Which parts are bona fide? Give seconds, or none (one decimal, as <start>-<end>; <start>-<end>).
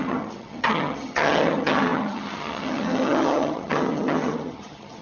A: none